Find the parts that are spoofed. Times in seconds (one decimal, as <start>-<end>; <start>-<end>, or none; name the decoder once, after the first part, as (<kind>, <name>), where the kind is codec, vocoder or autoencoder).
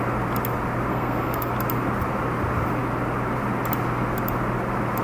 0.9-1.5 (codec, SNAC)